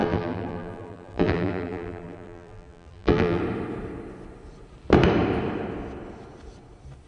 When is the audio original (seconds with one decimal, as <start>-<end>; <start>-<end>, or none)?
3.4-7.1